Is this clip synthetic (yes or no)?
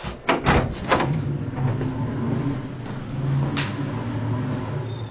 no